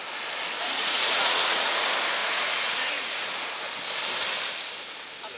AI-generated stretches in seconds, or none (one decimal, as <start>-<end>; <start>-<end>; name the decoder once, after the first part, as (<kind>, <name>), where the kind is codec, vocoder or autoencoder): 0.8-1.8 (vocoder, Vocos); 2.2-3.6